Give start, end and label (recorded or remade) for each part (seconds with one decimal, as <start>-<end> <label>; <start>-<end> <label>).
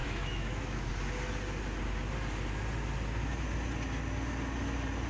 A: 0.0-0.9 remade; 0.9-5.1 recorded